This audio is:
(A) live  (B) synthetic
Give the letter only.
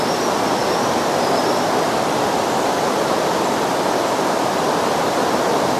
B